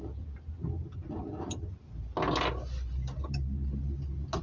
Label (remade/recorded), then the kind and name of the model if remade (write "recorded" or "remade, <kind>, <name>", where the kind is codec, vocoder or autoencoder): recorded